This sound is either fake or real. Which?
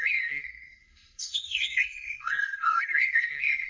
fake